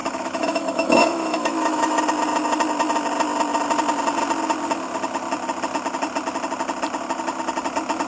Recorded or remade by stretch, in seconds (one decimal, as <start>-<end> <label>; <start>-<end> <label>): 0.0-2.0 remade; 2.0-8.1 recorded